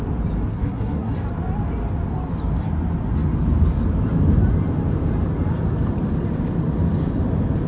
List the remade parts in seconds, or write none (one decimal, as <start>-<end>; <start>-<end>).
0.5-1.1